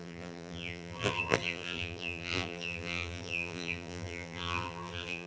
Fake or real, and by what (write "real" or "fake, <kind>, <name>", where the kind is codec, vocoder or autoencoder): fake, vocoder, BigVGAN v2